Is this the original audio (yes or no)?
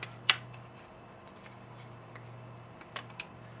no